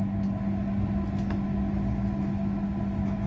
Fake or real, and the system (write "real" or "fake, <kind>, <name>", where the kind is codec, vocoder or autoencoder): real